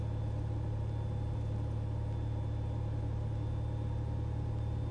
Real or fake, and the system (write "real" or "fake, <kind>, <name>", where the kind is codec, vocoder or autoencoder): real